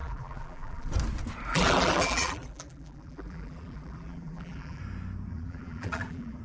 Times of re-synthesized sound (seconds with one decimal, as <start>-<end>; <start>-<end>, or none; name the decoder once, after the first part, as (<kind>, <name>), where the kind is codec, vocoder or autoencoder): 0.0-0.9 (vocoder, BigVGAN v2); 1.5-4.8; 5.3-6.4